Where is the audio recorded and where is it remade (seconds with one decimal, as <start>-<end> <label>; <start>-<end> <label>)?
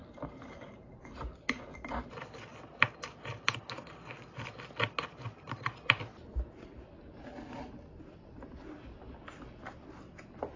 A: 0.0-10.6 recorded